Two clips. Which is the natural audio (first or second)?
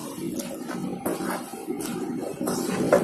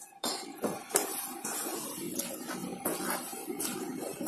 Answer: first